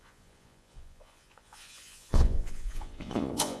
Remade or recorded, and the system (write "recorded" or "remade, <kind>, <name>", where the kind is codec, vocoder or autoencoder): remade, vocoder, Vocos